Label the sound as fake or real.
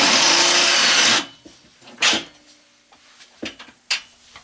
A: real